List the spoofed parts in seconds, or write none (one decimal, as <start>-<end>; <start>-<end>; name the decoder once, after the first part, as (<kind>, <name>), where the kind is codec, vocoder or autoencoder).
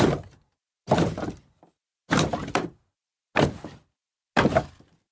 none